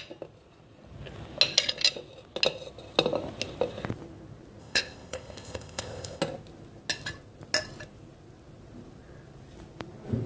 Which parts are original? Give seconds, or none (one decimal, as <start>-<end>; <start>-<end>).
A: 0.0-4.6; 6.2-10.3